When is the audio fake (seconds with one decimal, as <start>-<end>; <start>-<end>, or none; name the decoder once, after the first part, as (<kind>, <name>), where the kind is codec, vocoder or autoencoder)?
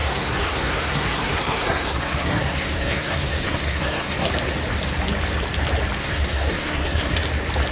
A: 0.0-4.3 (codec, SNAC); 6.0-7.2